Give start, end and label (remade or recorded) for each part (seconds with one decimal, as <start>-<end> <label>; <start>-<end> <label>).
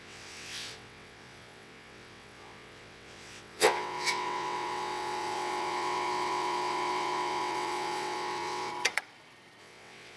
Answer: 0.0-8.7 remade; 8.7-9.6 recorded; 9.6-10.2 remade